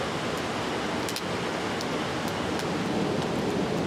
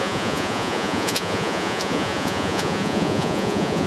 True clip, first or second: first